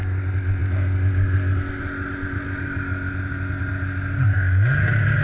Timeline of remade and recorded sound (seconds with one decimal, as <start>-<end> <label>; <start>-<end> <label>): 0.0-5.2 recorded